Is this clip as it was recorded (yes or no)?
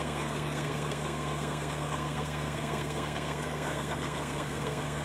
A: no